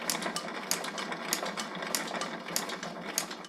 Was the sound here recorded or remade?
recorded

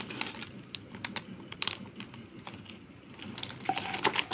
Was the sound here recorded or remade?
recorded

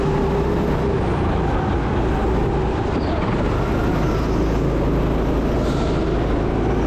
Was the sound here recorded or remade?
recorded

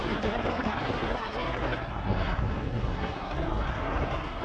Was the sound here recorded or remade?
remade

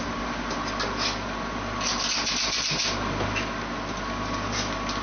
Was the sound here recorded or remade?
recorded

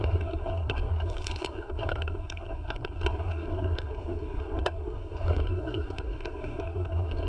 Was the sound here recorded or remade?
remade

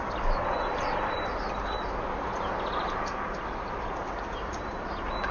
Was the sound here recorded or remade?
recorded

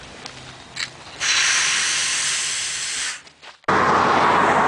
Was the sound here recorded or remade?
recorded